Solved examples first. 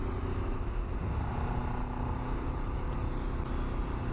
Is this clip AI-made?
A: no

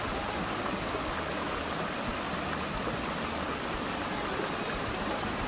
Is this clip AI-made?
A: no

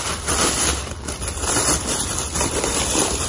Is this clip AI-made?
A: yes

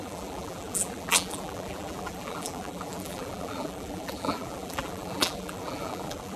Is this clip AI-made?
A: yes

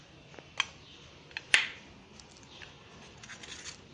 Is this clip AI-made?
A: no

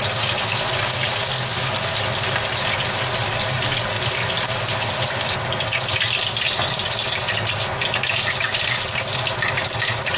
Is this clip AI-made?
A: no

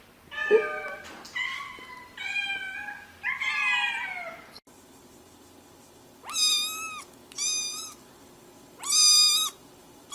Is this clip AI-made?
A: no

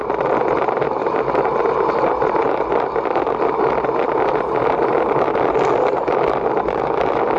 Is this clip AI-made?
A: no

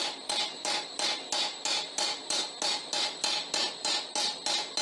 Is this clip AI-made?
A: no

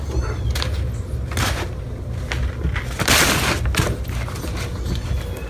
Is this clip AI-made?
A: no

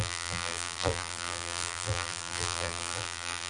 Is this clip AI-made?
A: yes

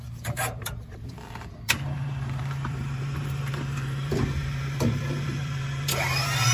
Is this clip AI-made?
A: yes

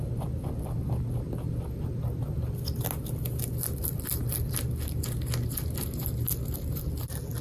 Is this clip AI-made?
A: no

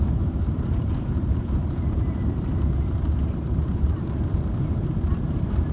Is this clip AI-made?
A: yes